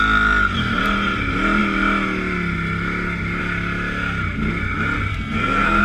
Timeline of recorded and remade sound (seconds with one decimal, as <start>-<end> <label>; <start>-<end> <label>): 0.0-5.1 recorded; 5.1-5.8 remade